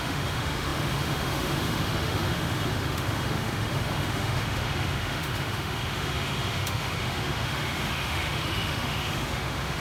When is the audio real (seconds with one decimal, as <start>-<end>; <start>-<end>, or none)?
none